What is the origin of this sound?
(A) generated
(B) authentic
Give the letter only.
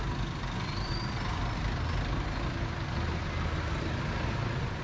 B